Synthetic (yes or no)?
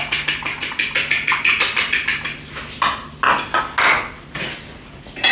no